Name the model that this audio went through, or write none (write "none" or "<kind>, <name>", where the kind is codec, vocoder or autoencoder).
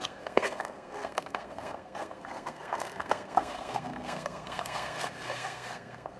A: codec, SNAC